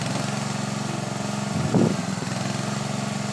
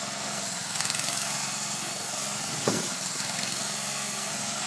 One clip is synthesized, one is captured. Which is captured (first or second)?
first